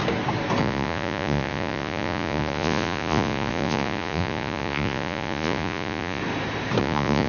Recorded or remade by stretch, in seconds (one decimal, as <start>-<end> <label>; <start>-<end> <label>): 0.0-0.6 recorded; 0.6-6.2 remade; 6.2-6.8 recorded; 6.8-7.3 remade